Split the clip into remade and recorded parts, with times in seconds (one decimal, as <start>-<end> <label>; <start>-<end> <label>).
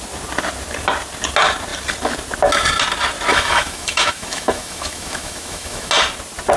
0.0-3.3 recorded; 3.3-5.9 remade; 5.9-6.6 recorded